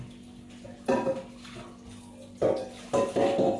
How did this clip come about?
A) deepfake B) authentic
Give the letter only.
B